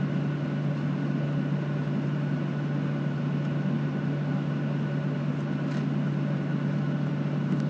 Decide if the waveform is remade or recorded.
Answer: recorded